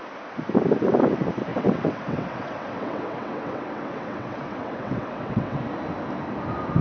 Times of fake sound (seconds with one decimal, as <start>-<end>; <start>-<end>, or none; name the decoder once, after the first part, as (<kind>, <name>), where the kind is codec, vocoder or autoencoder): 1.5-5.6 (vocoder, WaveNeXt)